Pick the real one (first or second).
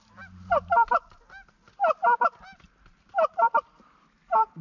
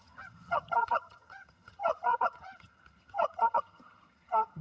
first